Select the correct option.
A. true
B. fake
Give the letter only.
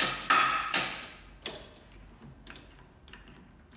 A